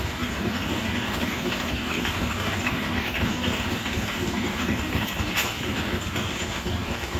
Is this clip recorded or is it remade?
remade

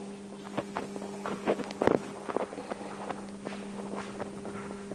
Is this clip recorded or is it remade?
recorded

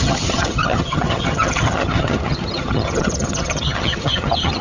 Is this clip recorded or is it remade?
remade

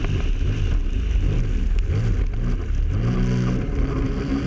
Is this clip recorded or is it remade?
recorded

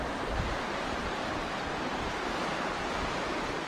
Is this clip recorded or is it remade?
recorded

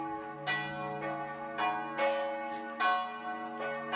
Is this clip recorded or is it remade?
recorded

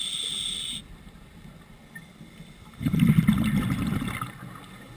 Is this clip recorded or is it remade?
recorded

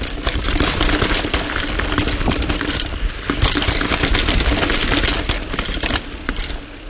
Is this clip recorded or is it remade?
recorded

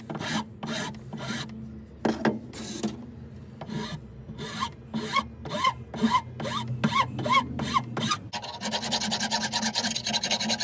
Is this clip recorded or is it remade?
recorded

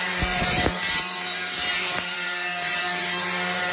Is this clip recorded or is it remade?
remade